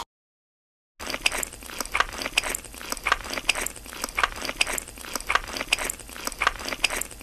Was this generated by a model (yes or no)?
no